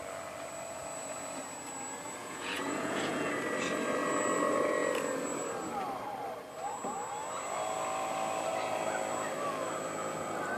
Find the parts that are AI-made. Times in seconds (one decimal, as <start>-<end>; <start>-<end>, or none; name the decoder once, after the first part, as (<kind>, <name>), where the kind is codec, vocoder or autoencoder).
2.2-3.3 (vocoder, Vocos)